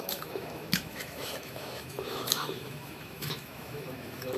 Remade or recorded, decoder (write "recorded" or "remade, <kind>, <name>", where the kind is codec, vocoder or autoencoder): remade, autoencoder, DAC-VAE